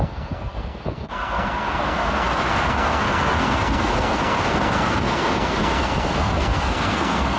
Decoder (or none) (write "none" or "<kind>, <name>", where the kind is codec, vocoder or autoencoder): codec, SNAC